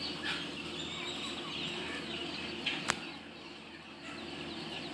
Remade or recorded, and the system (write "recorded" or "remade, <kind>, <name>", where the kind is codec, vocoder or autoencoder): recorded